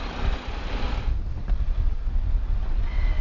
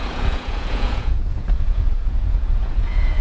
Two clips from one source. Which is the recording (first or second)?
first